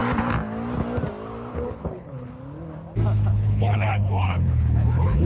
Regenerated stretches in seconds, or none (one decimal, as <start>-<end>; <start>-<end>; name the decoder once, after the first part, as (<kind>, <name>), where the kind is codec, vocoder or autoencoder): 1.5-2.3 (codec, HILCodec); 3.3-5.3